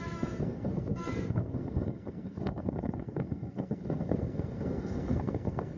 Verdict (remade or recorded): remade